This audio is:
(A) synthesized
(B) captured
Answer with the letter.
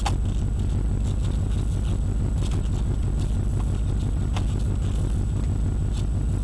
B